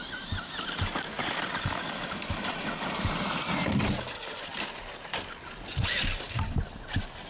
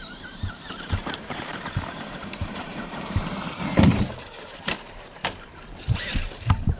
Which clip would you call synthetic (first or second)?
second